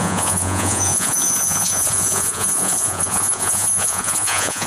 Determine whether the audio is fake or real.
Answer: fake